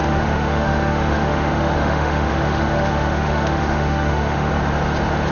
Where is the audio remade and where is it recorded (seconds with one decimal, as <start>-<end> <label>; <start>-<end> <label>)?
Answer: 0.0-4.5 remade; 4.5-5.3 recorded